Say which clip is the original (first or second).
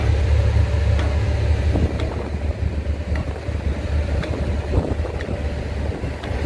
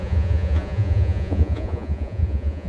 first